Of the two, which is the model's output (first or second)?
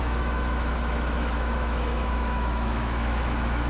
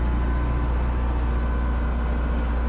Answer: first